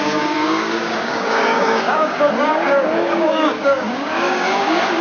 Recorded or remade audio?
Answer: remade